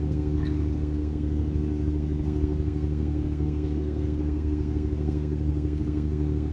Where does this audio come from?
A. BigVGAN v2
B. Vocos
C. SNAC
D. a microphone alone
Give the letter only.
C